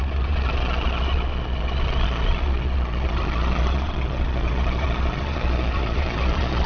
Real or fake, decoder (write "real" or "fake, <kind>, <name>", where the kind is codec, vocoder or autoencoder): fake, vocoder, Vocos